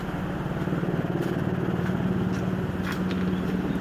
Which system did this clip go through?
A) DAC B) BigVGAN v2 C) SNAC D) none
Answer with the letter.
D